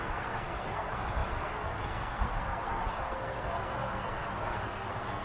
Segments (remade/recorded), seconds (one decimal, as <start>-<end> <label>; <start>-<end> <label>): 0.0-5.2 remade